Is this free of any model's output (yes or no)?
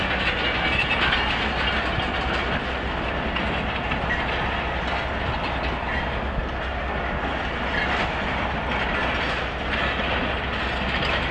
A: yes